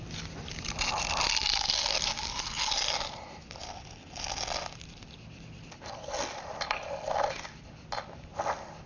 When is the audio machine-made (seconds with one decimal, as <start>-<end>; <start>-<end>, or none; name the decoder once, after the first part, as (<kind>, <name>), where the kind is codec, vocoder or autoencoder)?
none

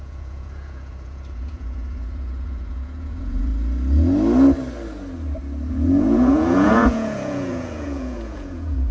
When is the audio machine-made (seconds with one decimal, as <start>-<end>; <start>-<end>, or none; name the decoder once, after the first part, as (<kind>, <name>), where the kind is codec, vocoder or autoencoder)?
0.0-3.5 (vocoder, Vocos); 5.7-8.9

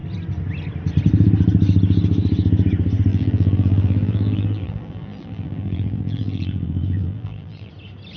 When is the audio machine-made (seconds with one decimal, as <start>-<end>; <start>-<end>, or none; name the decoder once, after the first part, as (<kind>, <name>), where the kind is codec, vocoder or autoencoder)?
3.1-7.7 (vocoder, BigVGAN v2)

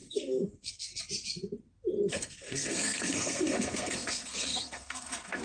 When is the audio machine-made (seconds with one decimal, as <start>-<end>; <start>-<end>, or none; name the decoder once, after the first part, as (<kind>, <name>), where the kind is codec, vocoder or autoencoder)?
0.0-1.0 (codec, SNAC); 2.1-5.4